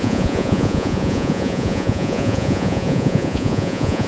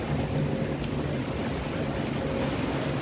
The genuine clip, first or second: second